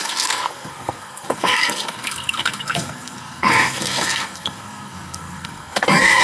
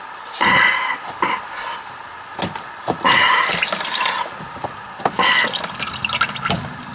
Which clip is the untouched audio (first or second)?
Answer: second